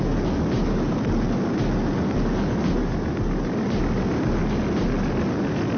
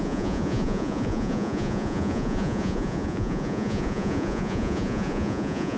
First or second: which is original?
first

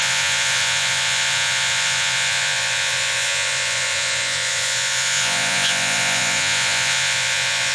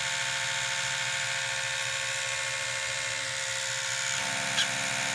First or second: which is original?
second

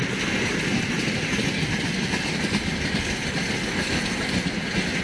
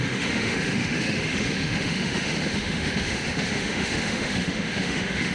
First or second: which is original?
first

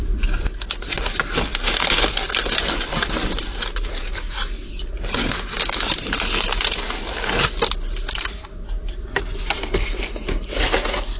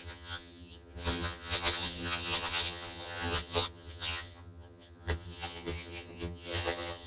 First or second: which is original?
first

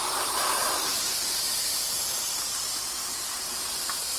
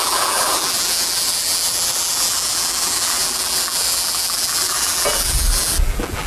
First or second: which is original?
first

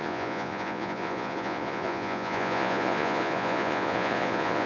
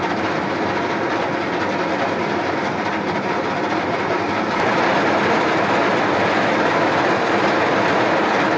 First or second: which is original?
second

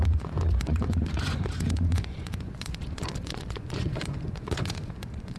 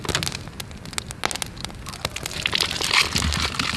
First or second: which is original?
second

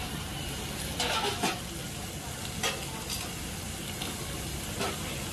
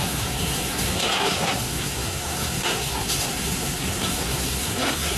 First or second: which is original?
first